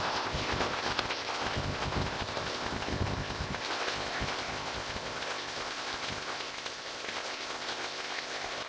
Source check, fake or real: fake